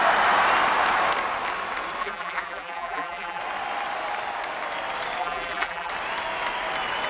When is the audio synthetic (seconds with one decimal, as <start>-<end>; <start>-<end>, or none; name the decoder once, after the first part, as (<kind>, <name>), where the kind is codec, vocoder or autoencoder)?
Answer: 2.0-3.4 (vocoder, BigVGAN v2); 5.2-5.9